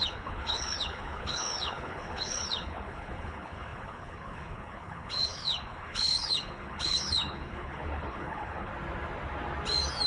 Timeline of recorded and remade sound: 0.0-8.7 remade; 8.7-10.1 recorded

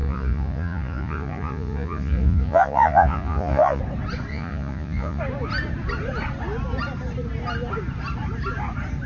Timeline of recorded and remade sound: 0.0-3.8 remade; 3.8-4.3 recorded; 4.3-5.2 remade; 5.2-9.1 recorded

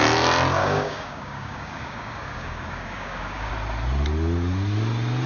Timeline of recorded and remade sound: 0.0-0.6 recorded; 0.6-3.5 remade; 3.5-5.3 recorded

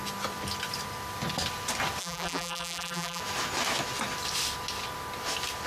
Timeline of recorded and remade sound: 0.0-2.0 recorded; 2.0-3.2 remade; 3.2-5.7 recorded

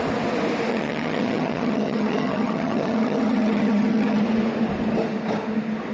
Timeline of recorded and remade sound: 0.0-0.7 recorded; 0.7-4.2 remade; 4.2-5.9 recorded

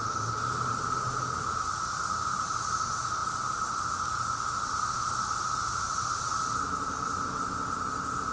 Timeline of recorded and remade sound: 0.0-8.3 recorded

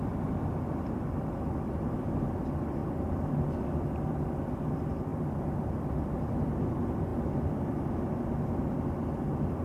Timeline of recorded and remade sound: 0.0-9.6 recorded